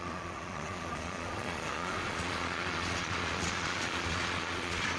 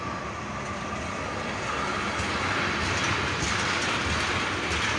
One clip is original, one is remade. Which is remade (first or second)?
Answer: first